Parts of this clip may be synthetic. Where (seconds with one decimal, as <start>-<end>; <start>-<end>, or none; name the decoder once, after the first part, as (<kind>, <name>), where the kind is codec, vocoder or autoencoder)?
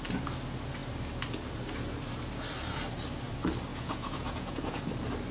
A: 3.7-4.8 (vocoder, Vocos)